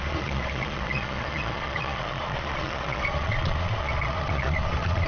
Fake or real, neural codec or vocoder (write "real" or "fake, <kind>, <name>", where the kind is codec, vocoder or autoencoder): fake, vocoder, Vocos